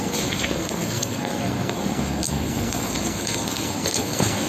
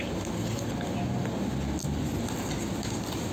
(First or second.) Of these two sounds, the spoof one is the first